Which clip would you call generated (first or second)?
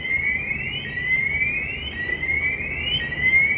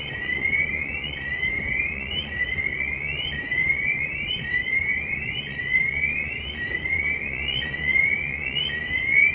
second